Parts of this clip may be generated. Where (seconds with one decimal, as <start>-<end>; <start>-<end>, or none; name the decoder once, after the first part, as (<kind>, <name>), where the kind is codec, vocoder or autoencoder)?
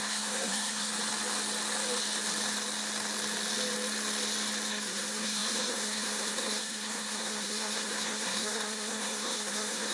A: 0.0-0.9 (codec, SNAC); 4.7-9.9